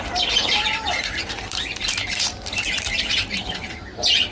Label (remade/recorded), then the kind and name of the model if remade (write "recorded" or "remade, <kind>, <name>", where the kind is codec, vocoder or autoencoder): remade, vocoder, BigVGAN v2